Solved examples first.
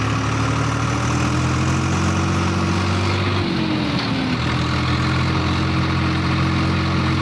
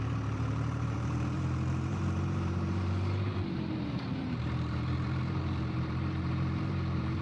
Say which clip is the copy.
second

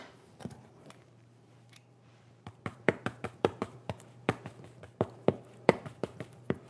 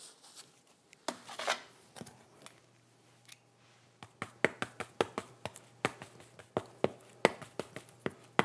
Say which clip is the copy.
first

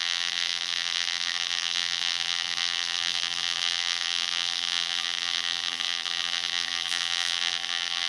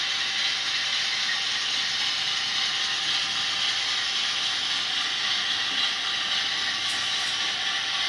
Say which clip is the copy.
first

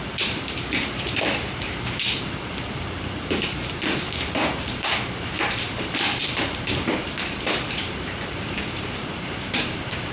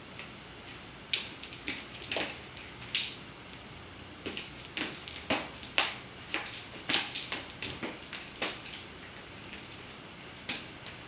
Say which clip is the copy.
first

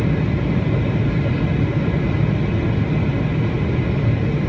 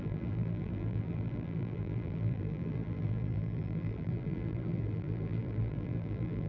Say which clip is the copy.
second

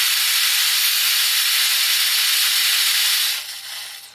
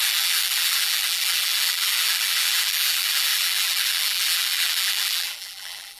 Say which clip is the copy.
second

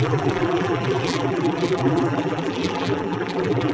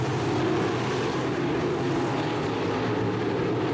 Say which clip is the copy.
first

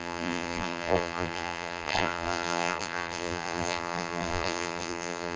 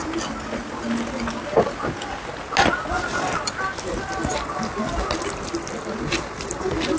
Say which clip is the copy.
first